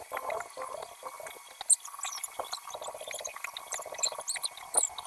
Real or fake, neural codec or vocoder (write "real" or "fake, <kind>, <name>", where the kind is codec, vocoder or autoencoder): real